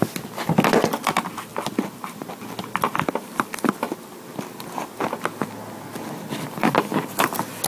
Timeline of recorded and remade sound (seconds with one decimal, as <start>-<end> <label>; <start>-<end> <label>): 0.0-7.7 recorded